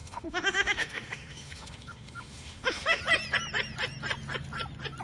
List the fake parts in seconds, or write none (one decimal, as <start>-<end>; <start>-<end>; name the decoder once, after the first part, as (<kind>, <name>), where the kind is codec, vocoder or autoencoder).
0.0-3.0 (autoencoder, DAC-VAE)